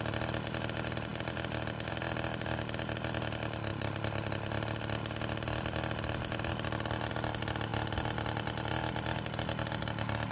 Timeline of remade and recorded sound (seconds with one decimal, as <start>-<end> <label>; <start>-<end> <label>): 0.0-10.3 recorded

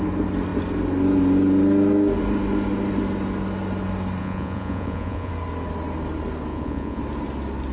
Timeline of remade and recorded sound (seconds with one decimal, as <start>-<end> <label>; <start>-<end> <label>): 0.0-4.2 recorded; 4.2-5.3 remade; 5.3-6.5 recorded; 6.5-7.0 remade; 7.0-7.7 recorded

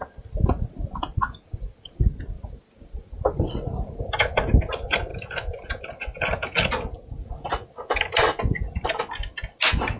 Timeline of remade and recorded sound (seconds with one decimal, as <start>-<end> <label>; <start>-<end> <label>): 0.0-10.0 recorded

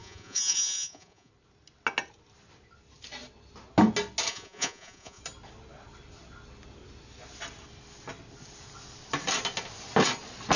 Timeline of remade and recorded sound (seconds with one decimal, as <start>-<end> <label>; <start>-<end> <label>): 0.0-1.3 remade; 1.3-4.3 recorded; 4.3-5.2 remade; 5.2-10.6 recorded

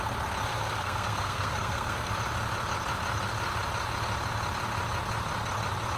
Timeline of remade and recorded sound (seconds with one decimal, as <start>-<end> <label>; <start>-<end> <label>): 0.0-0.5 recorded; 0.5-2.1 remade; 2.1-6.0 recorded

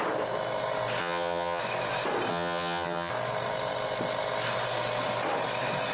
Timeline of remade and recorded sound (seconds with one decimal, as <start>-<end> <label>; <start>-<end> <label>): 0.0-1.0 recorded; 1.0-1.6 remade; 1.6-2.3 recorded; 2.3-3.1 remade; 3.1-5.9 recorded

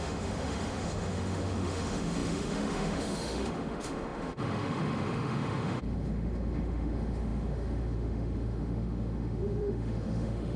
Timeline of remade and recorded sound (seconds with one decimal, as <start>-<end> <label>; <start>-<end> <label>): 0.0-10.6 remade

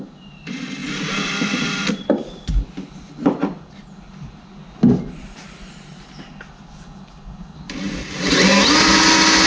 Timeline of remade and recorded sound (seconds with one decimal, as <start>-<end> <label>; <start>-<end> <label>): 0.0-9.5 recorded